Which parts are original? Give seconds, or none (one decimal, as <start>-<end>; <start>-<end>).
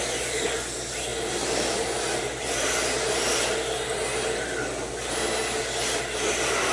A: 0.0-6.7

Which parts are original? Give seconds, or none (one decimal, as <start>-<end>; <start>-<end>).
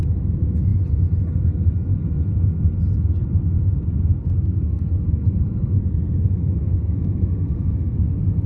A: 0.0-4.2; 5.8-6.2; 8.0-8.5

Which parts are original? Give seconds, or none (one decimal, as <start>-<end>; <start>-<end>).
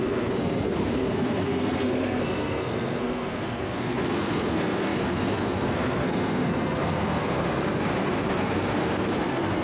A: 7.4-8.3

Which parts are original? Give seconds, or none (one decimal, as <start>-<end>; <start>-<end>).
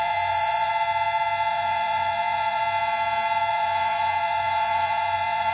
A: 0.7-1.5; 2.6-3.5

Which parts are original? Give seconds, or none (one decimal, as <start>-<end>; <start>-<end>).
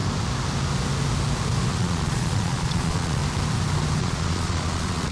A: 0.0-1.7; 3.2-4.0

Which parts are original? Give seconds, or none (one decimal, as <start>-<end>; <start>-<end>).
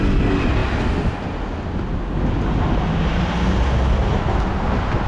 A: 0.0-5.1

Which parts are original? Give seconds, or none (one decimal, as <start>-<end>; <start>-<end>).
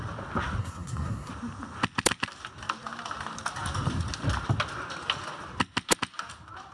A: 0.0-0.6; 1.3-6.7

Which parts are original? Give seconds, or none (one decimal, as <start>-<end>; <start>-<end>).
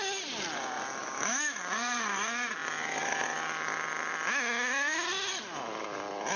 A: 0.0-1.0; 1.6-6.4